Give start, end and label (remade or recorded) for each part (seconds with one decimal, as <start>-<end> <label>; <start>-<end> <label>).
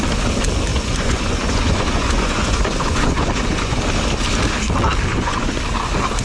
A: 0.0-0.7 recorded; 0.7-3.8 remade; 3.8-5.1 recorded; 5.1-5.6 remade; 5.6-6.2 recorded